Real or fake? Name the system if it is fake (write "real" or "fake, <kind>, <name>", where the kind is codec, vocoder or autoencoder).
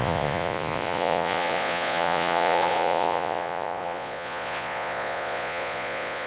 fake, vocoder, Vocos